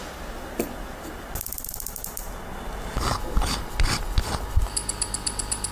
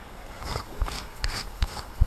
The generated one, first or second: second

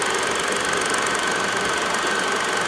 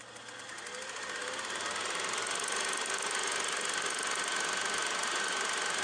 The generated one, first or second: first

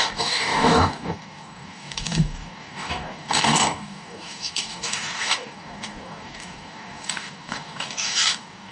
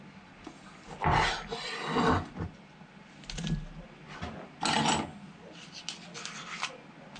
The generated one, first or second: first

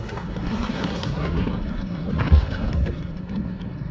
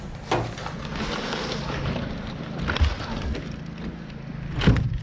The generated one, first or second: first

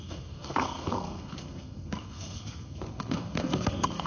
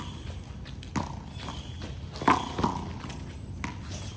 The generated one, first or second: first